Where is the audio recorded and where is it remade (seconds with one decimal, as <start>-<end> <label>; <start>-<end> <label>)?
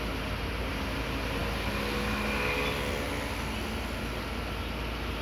0.0-5.2 recorded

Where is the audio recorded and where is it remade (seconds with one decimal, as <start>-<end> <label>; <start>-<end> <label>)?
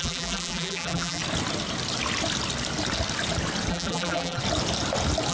0.0-1.2 remade; 1.2-3.7 recorded; 3.7-4.4 remade; 4.4-5.3 recorded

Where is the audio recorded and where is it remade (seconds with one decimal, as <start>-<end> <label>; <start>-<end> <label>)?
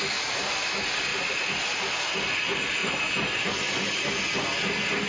0.0-2.8 recorded; 2.8-3.5 remade; 3.5-5.1 recorded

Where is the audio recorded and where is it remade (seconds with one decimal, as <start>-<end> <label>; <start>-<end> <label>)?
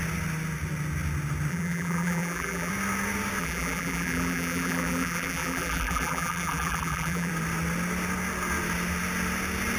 0.0-1.5 recorded; 1.5-2.7 remade; 2.7-3.4 recorded; 3.4-7.3 remade; 7.3-9.8 recorded